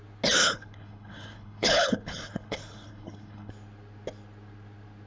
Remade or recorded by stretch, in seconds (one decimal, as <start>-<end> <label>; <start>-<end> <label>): 0.0-0.4 recorded; 0.4-3.5 remade; 3.5-5.1 recorded